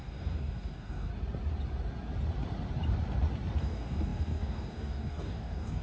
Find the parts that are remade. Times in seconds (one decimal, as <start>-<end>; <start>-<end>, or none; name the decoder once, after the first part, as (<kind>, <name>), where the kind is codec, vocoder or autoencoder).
0.0-1.1 (codec, DAC); 3.6-5.8